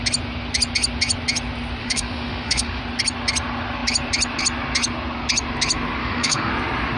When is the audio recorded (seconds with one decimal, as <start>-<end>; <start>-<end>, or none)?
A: 0.0-1.8; 2.8-6.0; 6.5-7.0